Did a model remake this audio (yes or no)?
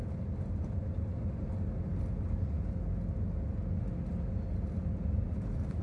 no